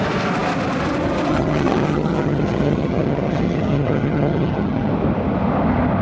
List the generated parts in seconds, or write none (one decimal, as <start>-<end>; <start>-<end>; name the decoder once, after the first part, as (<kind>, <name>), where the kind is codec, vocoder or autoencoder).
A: 1.3-4.9 (vocoder, HiFi-GAN)